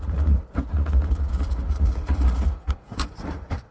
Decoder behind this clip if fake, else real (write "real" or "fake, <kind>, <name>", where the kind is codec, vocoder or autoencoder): fake, vocoder, Vocos